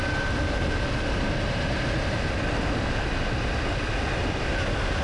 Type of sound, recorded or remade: recorded